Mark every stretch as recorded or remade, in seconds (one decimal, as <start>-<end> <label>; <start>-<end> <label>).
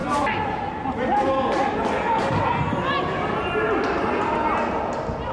0.0-5.3 recorded